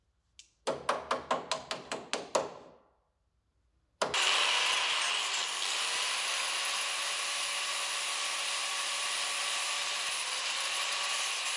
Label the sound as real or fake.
real